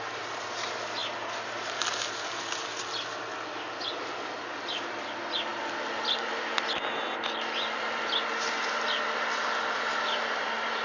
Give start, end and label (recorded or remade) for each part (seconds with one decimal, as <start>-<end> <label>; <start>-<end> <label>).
0.0-10.8 recorded